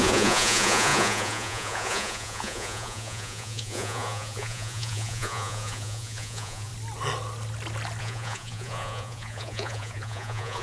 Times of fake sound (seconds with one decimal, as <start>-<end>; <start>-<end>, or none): 0.0-6.7; 8.0-10.6